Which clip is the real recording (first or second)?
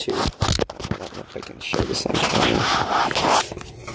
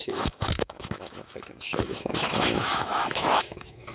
first